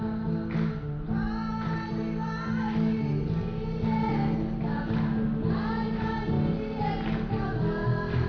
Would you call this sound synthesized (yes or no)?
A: no